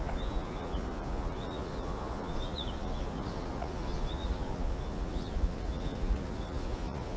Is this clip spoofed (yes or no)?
yes